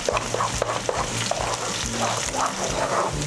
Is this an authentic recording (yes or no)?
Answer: yes